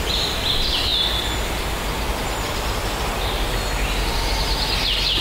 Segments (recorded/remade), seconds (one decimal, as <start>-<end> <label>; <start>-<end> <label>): 0.0-5.2 recorded

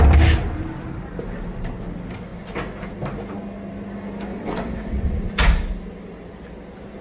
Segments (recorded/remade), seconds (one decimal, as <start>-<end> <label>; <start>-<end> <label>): 0.0-4.3 recorded; 4.3-5.3 remade; 5.3-7.0 recorded

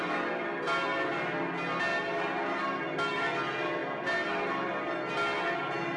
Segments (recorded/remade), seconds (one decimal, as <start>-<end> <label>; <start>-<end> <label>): 0.0-6.0 recorded

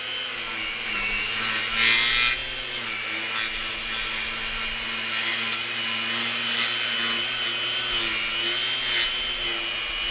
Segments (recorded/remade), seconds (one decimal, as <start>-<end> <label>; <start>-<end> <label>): 0.0-10.1 recorded

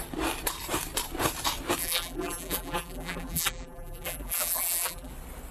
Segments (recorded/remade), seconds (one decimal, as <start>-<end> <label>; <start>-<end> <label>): 0.0-1.8 recorded; 1.8-5.1 remade; 5.1-5.5 recorded